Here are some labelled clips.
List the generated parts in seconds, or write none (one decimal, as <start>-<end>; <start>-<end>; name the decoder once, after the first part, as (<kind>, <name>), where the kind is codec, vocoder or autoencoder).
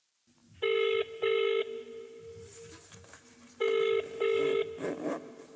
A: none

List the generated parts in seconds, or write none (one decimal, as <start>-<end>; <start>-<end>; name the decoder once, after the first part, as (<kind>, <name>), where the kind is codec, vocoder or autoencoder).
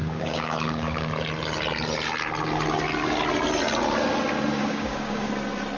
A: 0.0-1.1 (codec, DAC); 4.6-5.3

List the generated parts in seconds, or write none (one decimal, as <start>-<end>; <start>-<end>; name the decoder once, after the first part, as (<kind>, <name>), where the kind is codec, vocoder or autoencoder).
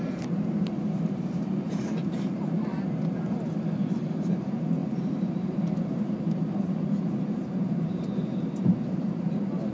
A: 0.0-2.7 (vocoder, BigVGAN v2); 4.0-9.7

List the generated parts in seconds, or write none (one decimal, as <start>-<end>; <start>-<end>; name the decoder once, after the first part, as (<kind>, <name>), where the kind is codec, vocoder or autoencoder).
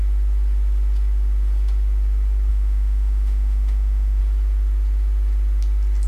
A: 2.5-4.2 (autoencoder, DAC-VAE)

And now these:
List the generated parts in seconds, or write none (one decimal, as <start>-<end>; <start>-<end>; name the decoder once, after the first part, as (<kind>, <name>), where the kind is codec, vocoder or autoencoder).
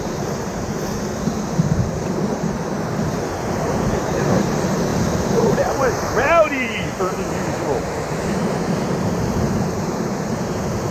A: 4.9-9.6 (vocoder, BigVGAN v2)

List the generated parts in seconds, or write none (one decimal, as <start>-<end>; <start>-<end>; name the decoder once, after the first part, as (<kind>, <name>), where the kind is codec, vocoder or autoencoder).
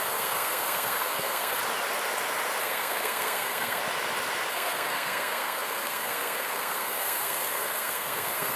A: 0.0-1.6 (codec, SNAC); 2.6-3.8; 4.5-8.6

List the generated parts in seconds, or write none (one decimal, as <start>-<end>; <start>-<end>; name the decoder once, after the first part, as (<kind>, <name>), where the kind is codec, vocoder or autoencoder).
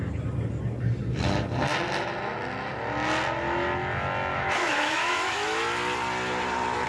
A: 4.3-5.6 (autoencoder, DAC-VAE)